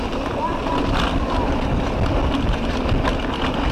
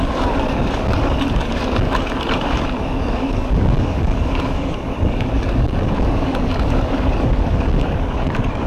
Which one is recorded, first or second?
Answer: first